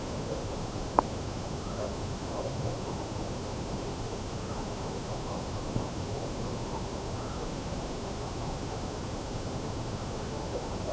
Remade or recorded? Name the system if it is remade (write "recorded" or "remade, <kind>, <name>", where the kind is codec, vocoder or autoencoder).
remade, autoencoder, DAC-VAE